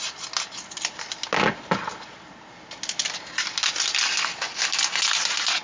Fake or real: real